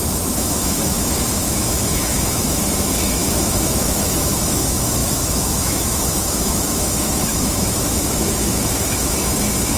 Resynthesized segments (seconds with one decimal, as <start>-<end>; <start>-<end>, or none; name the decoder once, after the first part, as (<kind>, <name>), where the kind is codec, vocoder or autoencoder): 0.0-9.8 (autoencoder, DAC-VAE)